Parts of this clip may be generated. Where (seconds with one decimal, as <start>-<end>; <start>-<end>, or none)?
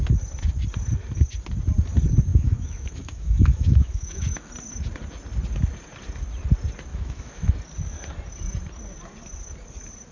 2.3-4.5; 6.9-7.5